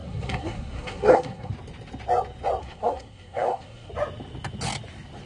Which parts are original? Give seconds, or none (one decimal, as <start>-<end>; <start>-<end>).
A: 1.5-2.6; 3.9-5.3